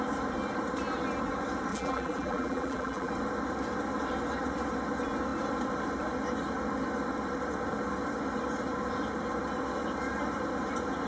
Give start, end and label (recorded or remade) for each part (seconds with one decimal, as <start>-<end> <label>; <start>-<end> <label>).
0.0-1.7 recorded; 1.7-3.1 remade; 3.1-11.1 recorded